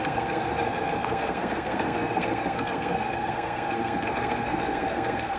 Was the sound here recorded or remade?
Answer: remade